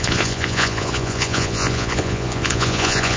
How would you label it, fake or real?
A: fake